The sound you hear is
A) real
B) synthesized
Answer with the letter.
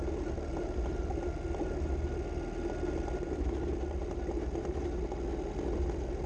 A